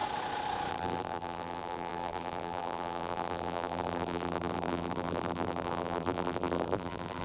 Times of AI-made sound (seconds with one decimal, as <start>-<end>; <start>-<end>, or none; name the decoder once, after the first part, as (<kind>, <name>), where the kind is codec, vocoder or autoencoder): 0.7-7.2 (vocoder, BigVGAN v2)